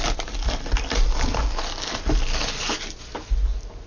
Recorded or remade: recorded